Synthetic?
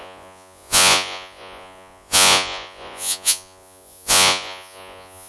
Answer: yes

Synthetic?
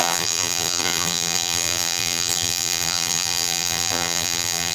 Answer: yes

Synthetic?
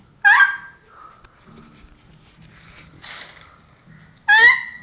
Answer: no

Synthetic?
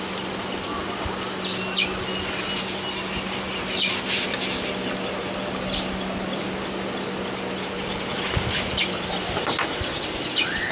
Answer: no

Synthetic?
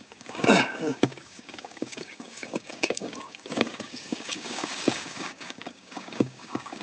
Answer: yes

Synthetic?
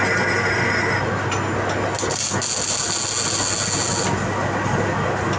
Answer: no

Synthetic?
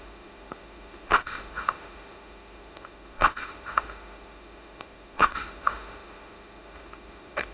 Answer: yes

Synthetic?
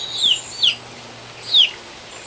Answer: no